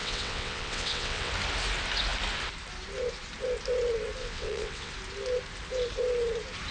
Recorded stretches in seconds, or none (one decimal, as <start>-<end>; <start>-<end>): 1.3-4.2; 4.9-6.7